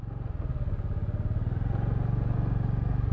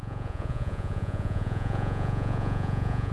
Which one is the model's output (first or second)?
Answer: second